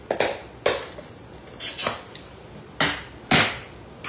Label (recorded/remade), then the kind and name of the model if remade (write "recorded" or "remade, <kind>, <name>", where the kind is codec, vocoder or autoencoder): recorded